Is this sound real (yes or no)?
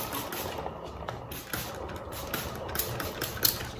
yes